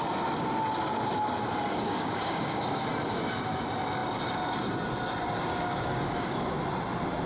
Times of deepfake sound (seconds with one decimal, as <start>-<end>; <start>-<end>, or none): 1.7-2.8; 5.5-6.5